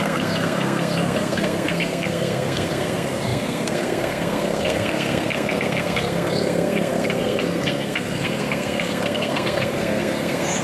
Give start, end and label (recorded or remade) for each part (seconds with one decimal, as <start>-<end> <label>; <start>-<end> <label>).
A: 0.0-10.6 remade